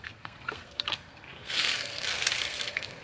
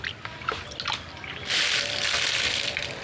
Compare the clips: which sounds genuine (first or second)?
second